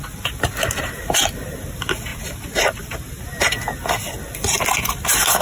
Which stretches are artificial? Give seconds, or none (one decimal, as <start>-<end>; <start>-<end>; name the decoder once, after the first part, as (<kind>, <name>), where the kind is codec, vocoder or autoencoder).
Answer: none